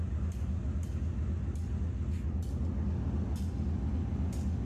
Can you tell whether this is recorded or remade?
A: recorded